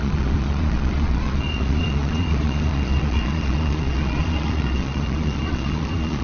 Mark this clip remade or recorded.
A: remade